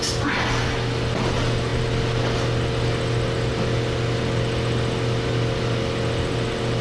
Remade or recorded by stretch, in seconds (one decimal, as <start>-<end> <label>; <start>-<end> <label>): 0.0-6.8 recorded